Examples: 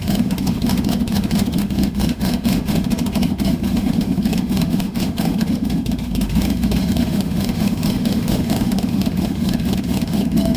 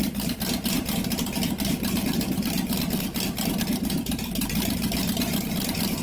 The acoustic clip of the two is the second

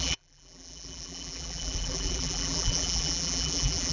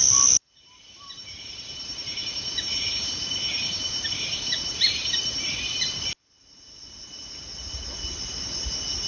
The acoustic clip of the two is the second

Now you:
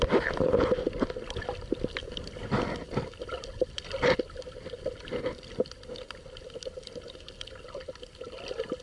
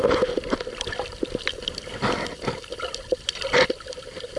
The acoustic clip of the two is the first